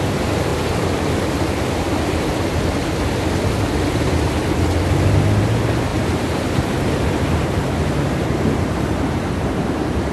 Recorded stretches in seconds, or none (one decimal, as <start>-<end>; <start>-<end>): 0.5-5.4